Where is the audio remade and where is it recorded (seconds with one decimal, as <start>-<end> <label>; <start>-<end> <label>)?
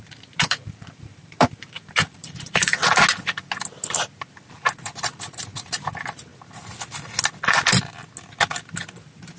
0.0-2.8 remade; 2.8-4.5 recorded; 4.5-6.3 remade; 6.3-8.9 recorded; 8.9-9.4 remade